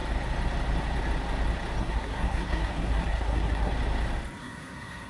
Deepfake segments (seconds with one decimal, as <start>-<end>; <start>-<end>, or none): 1.8-3.7; 4.4-5.1